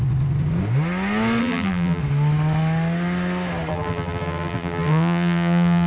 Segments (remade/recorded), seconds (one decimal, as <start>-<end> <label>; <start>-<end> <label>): 0.0-1.4 recorded; 1.4-2.0 remade; 2.0-3.7 recorded; 3.7-5.9 remade